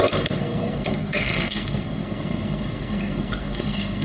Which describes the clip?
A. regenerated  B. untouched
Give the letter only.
A